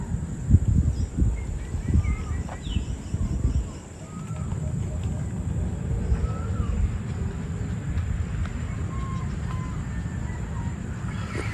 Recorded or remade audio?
recorded